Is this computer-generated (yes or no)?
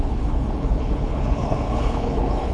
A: yes